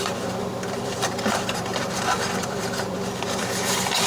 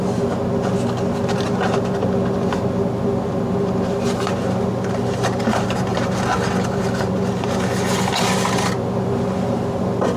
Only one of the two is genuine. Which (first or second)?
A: second